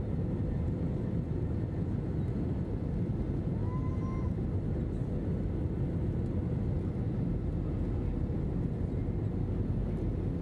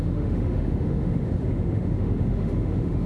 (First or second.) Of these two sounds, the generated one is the second